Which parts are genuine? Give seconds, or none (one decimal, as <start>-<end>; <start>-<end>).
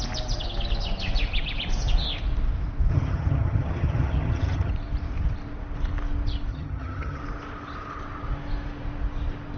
0.0-2.9; 4.7-6.5; 7.2-9.6